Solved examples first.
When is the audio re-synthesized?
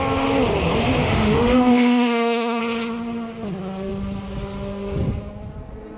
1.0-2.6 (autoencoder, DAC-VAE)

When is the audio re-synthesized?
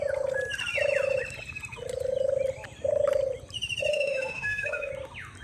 3.9-4.9 (autoencoder, DAC-VAE)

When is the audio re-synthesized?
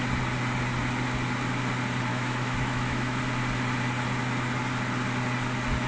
2.1-3.2 (autoencoder, DAC-VAE)